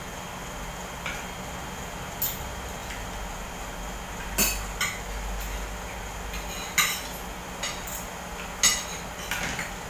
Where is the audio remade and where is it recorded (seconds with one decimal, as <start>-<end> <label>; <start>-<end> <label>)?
0.0-9.9 recorded